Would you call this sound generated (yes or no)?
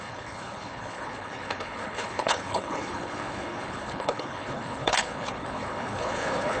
yes